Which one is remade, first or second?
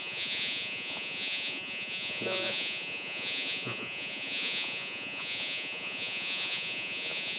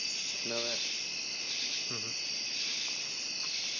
first